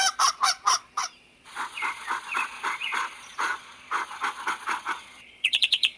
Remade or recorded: remade